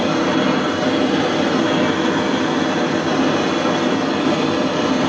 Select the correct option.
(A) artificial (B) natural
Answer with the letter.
B